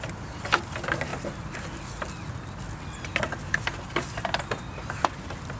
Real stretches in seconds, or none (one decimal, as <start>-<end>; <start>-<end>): 0.0-5.6